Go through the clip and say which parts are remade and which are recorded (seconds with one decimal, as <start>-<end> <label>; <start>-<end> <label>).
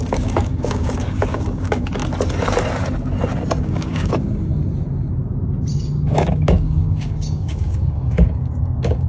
0.0-2.0 remade; 2.0-3.6 recorded; 3.6-4.5 remade; 4.5-5.7 recorded; 5.7-9.1 remade